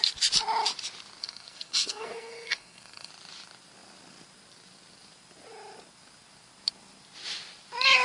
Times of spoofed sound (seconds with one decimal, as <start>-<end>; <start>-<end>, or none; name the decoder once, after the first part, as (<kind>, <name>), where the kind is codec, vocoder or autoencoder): 1.2-3.1 (codec, SNAC)